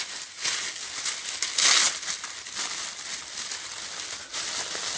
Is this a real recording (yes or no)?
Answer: yes